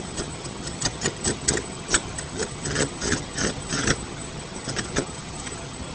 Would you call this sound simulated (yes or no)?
yes